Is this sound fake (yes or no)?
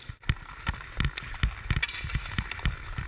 no